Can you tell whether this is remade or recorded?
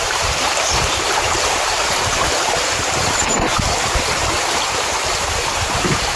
remade